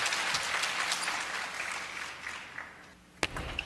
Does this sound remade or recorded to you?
recorded